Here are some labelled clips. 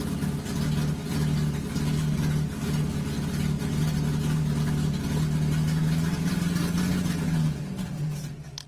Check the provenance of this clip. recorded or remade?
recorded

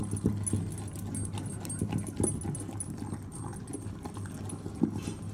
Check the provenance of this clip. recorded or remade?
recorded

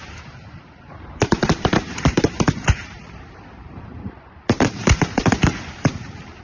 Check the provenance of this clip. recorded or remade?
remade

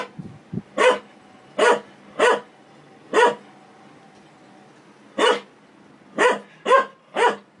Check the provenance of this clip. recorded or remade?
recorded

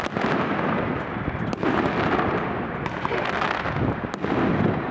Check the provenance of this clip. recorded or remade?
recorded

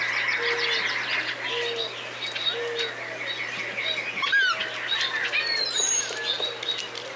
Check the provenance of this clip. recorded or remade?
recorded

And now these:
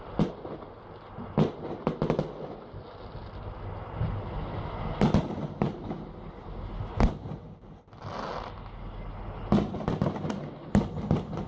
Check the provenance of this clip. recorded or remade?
recorded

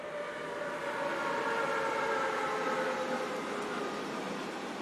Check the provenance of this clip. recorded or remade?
recorded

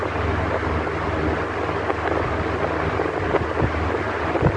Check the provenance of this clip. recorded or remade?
recorded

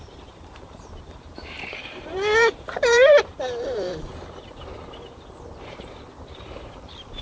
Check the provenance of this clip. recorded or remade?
remade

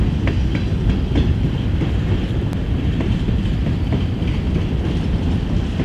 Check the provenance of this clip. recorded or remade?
recorded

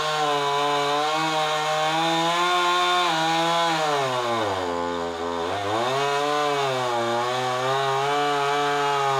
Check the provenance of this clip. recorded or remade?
recorded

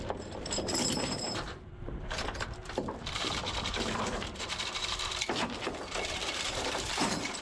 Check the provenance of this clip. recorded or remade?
remade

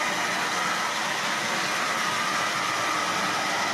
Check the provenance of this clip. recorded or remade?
recorded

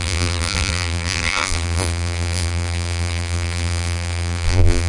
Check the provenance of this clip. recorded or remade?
remade